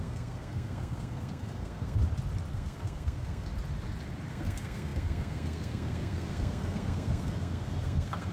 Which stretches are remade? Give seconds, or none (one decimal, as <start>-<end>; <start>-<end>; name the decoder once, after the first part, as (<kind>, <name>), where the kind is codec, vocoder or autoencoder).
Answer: 0.0-2.0 (codec, SNAC); 2.5-3.5; 4.3-8.3